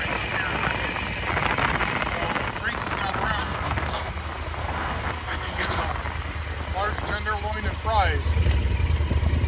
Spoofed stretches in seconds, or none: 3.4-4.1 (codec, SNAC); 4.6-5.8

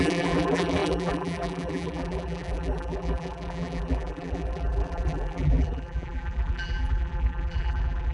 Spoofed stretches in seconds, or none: 0.0-8.1 (vocoder, BigVGAN v2)

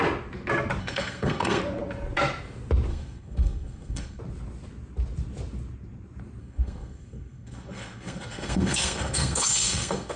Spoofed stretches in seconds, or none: 0.8-1.6 (codec, SNAC); 2.9-4.2; 6.4-10.2

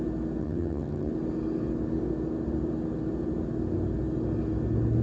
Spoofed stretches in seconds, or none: 0.4-1.1 (vocoder, HiFi-GAN)

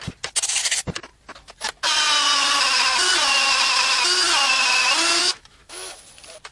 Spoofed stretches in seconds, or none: 5.2-6.0 (autoencoder, DAC-VAE)

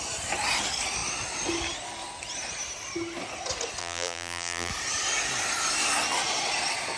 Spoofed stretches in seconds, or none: 3.8-4.7 (vocoder, BigVGAN v2)